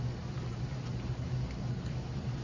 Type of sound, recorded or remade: remade